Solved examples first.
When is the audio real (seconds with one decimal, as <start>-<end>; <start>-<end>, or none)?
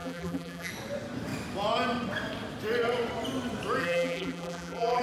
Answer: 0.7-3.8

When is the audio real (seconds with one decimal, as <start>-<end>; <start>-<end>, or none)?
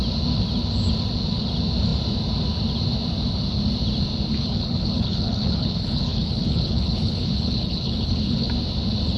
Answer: 0.0-4.3; 8.5-9.2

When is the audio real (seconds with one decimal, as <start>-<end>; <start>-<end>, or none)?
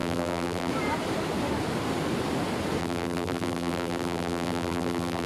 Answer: 0.7-2.8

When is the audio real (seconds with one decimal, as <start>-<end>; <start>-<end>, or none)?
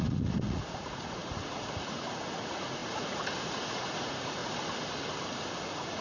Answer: 4.4-5.6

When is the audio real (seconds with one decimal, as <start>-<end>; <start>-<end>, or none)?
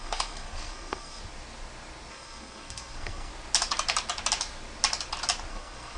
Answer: 1.2-2.1; 3.3-5.5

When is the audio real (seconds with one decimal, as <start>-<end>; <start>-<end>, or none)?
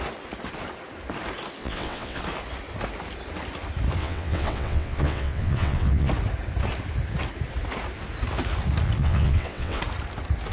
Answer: 0.0-1.6; 2.2-4.0; 6.1-9.0; 9.8-10.5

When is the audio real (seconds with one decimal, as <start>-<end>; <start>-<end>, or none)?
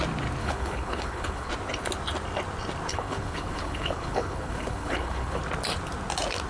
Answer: 0.0-0.4; 1.5-2.9; 5.4-6.5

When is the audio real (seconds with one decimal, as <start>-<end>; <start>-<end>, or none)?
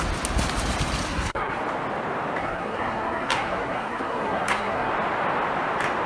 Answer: 0.0-1.1; 1.6-2.4; 4.9-6.1